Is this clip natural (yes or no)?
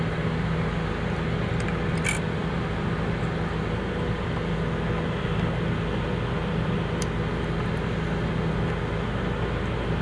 yes